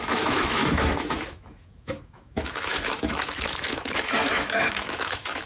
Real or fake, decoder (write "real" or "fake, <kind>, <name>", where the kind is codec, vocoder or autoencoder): fake, autoencoder, DAC-VAE